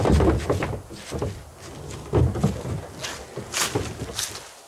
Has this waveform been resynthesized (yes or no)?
no